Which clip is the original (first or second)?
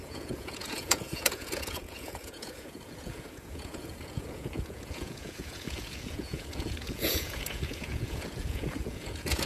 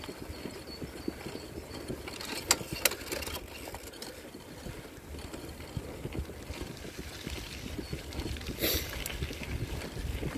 second